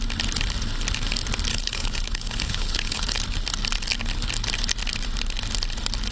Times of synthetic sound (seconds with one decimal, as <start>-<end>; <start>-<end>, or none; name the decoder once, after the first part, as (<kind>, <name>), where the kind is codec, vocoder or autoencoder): 1.5-3.2 (codec, HILCodec)